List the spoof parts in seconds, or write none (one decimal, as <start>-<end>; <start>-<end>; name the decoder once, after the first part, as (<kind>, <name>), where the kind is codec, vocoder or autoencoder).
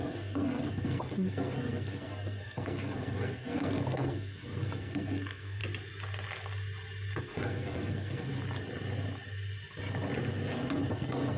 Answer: 0.0-5.6 (codec, SNAC); 7.2-8.3; 10.9-11.4